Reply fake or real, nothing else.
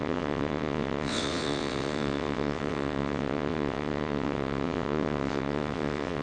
fake